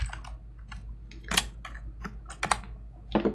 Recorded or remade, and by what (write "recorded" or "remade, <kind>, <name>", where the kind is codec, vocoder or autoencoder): recorded